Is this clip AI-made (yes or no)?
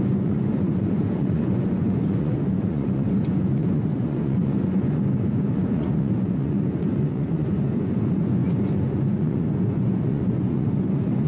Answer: yes